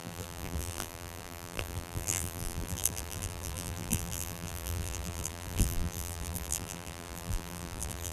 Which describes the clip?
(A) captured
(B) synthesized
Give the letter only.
B